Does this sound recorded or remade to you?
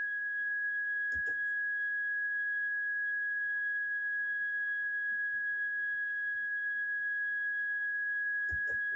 recorded